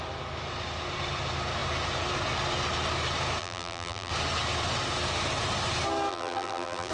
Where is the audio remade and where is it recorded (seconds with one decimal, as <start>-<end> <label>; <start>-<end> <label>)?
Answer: 0.0-3.4 recorded; 3.4-4.1 remade; 4.1-6.1 recorded; 6.1-6.9 remade